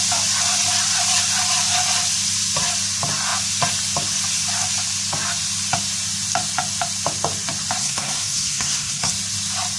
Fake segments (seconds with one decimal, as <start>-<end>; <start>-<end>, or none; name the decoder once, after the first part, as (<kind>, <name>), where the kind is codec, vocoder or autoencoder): 7.8-9.1 (codec, SNAC)